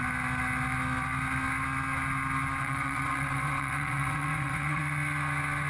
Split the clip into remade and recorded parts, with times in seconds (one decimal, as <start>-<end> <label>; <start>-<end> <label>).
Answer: 0.0-2.6 recorded; 2.6-4.8 remade; 4.8-5.7 recorded